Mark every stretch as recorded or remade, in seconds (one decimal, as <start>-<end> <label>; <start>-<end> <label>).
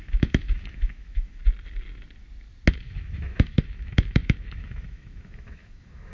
0.0-1.4 remade; 1.4-2.7 recorded; 2.7-6.1 remade